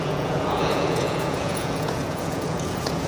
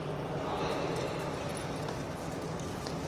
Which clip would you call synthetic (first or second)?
first